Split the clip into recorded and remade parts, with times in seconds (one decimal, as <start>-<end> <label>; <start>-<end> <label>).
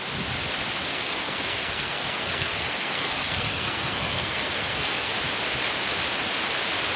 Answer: 0.0-0.9 recorded; 0.9-5.1 remade; 5.1-7.0 recorded